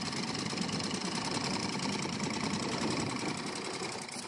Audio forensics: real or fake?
real